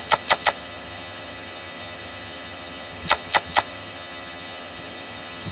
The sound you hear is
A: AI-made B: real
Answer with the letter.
A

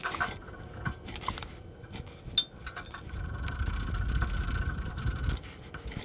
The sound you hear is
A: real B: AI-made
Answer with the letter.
A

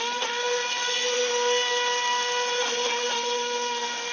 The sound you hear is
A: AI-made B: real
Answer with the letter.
B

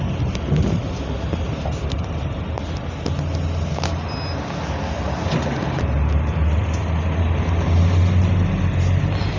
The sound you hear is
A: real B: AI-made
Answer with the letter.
A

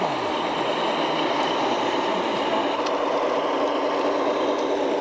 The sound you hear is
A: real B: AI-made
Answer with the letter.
A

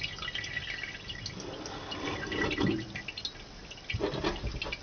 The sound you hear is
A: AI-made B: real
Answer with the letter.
B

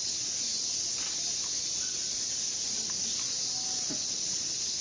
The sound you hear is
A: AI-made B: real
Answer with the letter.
B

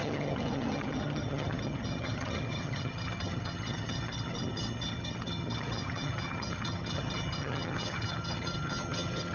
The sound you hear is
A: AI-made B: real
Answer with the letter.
A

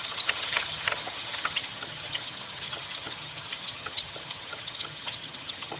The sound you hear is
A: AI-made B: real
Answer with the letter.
A